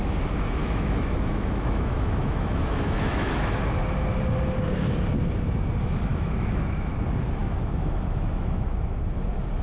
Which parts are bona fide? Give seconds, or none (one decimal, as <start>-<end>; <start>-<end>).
0.0-0.6; 3.5-6.1; 6.9-7.4; 9.0-9.6

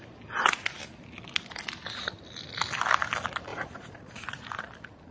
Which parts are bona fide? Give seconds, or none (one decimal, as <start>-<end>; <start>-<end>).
0.0-3.5; 4.6-5.1

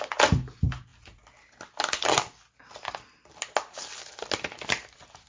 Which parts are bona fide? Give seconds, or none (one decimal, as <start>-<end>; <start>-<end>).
0.0-5.3

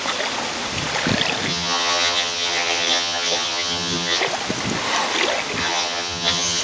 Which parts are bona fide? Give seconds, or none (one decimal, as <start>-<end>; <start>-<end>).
0.0-1.5; 4.2-5.6

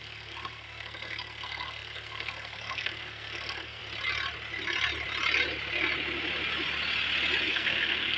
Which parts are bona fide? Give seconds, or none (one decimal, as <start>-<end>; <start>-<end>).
3.8-7.5

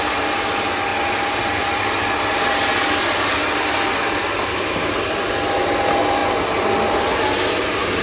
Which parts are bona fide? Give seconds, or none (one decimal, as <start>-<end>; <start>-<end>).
0.0-8.0

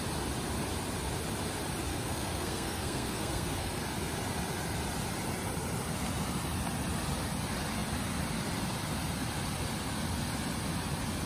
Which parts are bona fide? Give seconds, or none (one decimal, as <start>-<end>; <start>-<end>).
0.0-1.9; 3.8-11.3

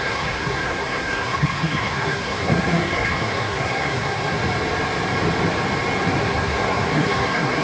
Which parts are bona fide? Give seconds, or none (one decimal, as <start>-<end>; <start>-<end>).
4.4-6.2